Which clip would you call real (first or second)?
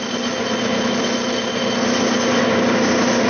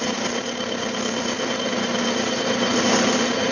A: first